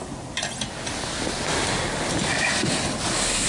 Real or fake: real